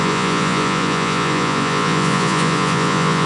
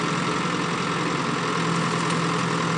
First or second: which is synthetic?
first